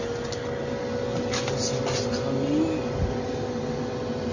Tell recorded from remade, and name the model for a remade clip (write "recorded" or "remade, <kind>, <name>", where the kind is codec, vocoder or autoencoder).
recorded